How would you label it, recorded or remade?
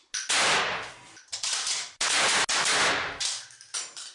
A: recorded